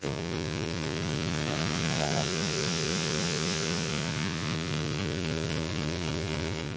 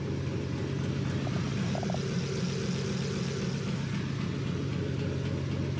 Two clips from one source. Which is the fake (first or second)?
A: first